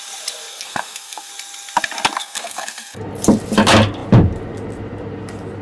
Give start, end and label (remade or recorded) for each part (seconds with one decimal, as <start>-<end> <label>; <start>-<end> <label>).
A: 0.0-0.5 recorded; 0.5-1.3 remade; 1.3-2.2 recorded; 2.2-3.0 remade; 3.0-5.6 recorded